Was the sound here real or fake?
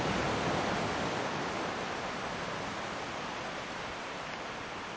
real